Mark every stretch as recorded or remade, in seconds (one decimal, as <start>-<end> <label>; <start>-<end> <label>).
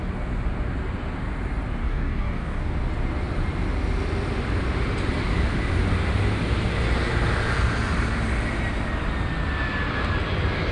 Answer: 0.0-1.8 recorded; 1.8-2.6 remade; 2.6-10.7 recorded